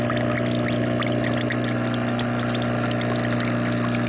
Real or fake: real